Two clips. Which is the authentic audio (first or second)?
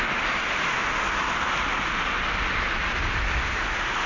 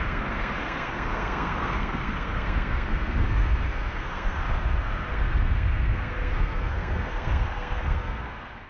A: first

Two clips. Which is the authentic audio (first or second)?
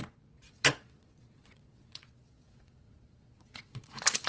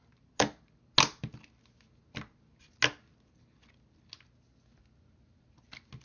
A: second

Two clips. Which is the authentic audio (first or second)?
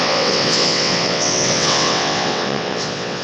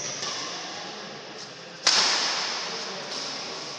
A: second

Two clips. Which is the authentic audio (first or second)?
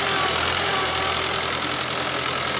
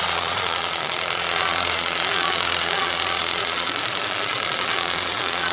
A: first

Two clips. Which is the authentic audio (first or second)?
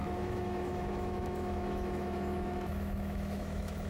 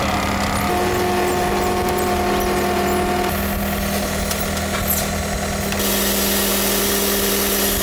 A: second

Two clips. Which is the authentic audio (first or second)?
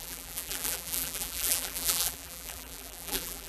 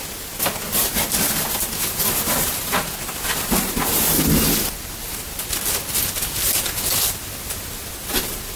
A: second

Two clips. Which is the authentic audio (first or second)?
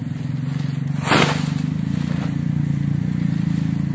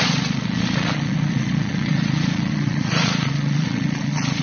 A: first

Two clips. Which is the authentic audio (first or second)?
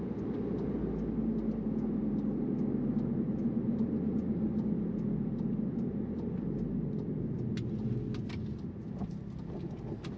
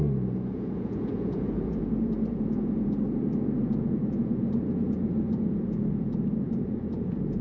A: first